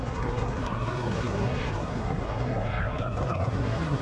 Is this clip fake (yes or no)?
yes